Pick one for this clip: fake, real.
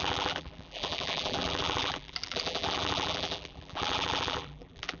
fake